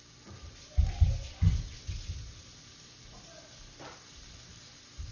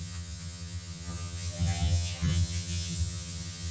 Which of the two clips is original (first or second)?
first